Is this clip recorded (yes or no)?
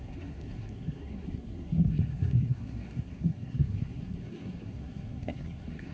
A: no